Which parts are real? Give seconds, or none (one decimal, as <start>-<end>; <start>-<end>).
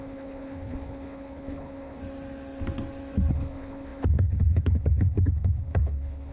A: 2.0-3.3